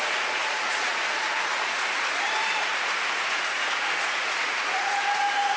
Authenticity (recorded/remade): remade